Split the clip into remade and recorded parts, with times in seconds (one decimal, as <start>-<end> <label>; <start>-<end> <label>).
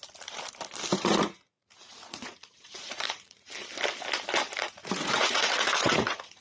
0.0-0.9 recorded; 0.9-3.5 remade; 3.5-4.6 recorded; 4.6-6.4 remade